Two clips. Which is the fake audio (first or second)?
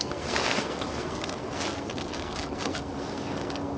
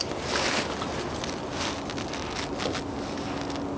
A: first